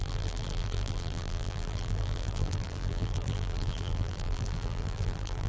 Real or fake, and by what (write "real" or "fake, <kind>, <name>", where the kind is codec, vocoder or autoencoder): fake, vocoder, BigVGAN v2